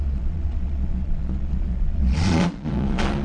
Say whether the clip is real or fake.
fake